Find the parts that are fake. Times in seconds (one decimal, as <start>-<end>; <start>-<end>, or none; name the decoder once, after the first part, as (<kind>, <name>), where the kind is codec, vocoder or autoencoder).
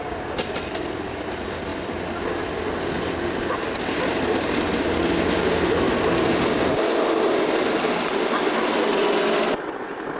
none